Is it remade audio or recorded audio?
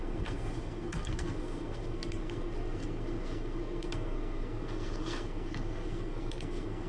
remade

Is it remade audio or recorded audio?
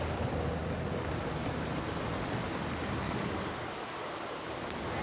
recorded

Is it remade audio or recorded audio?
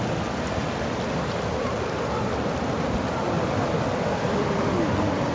recorded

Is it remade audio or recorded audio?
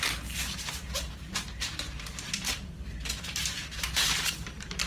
remade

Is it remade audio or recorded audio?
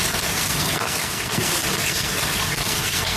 remade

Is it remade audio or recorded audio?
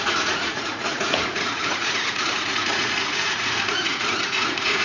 remade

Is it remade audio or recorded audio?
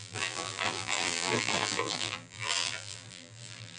remade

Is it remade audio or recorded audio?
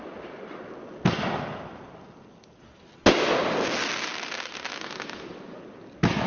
recorded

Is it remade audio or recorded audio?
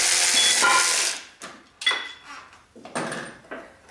recorded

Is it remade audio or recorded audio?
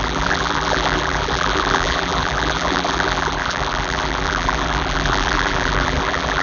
remade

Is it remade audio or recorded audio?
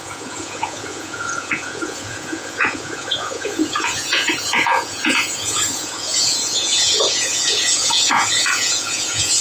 remade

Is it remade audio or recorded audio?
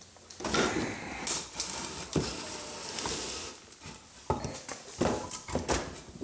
recorded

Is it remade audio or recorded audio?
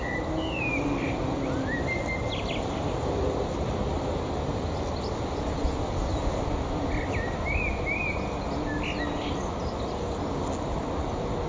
recorded